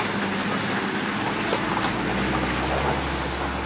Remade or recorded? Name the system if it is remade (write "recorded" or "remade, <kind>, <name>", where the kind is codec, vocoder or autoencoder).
recorded